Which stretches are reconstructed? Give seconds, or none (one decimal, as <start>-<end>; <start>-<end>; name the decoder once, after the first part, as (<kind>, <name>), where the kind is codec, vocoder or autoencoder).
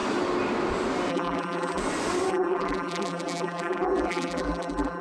1.1-1.8 (vocoder, BigVGAN v2); 2.3-5.0